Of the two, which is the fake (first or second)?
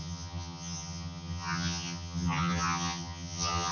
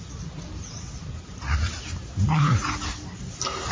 first